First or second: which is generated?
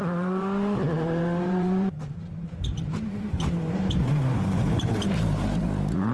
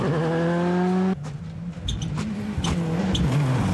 first